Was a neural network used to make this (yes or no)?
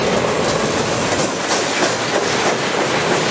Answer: no